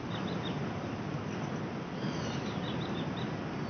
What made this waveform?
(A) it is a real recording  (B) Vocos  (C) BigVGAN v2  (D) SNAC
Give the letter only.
A